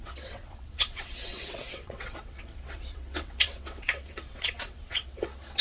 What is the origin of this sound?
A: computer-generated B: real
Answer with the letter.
A